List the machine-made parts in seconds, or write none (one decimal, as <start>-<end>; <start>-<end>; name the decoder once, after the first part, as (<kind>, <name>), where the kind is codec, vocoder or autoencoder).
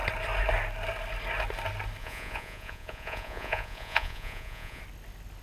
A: 2.0-4.8 (vocoder, Vocos)